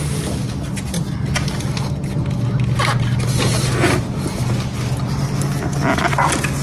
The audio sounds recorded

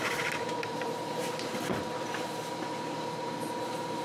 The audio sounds recorded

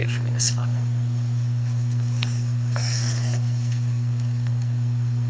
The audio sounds remade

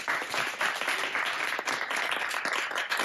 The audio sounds recorded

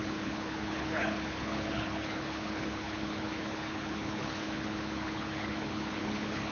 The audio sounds remade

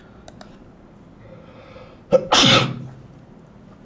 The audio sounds recorded